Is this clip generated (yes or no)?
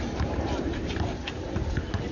yes